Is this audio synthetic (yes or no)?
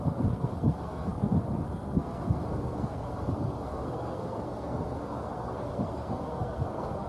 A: yes